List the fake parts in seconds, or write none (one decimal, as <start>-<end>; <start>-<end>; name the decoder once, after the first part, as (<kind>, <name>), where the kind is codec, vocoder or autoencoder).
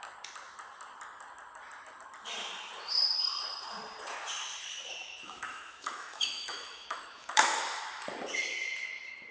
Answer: 5.0-7.6 (autoencoder, DAC-VAE)